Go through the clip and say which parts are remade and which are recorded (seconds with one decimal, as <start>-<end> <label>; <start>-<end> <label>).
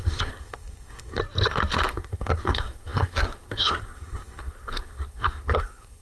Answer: 0.0-1.2 remade; 1.2-1.9 recorded; 1.9-6.0 remade